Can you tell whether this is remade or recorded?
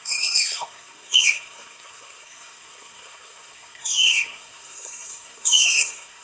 remade